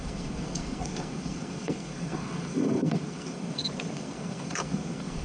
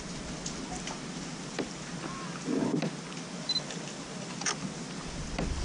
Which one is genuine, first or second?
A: second